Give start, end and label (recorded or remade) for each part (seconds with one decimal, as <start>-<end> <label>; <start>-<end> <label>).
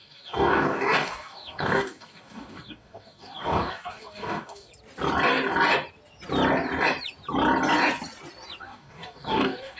0.0-4.7 remade; 4.7-8.6 recorded; 8.6-9.8 remade